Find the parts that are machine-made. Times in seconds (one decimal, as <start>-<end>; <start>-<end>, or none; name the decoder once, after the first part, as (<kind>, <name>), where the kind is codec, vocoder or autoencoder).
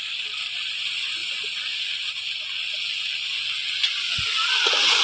none